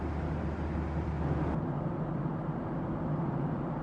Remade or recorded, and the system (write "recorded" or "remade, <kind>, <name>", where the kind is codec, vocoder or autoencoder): recorded